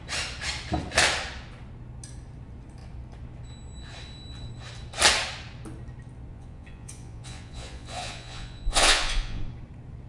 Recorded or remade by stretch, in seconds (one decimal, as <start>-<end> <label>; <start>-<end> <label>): 0.0-6.3 recorded; 6.3-9.4 remade; 9.4-10.1 recorded